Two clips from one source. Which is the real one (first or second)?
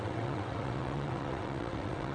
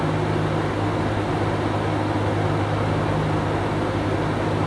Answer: second